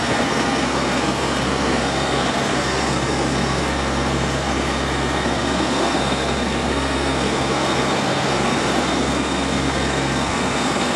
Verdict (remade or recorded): remade